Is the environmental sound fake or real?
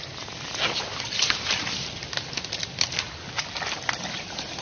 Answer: real